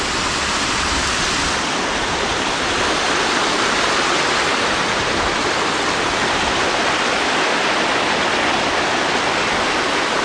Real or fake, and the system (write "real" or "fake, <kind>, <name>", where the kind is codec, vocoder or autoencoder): real